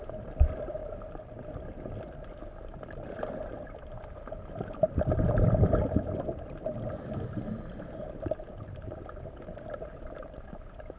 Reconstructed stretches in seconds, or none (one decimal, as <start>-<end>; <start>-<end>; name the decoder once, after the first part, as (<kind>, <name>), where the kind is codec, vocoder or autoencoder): 0.0-11.0 (vocoder, BigVGAN v2)